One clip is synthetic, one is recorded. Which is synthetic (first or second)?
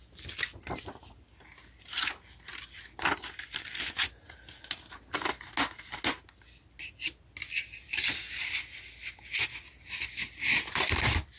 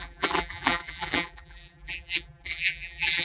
second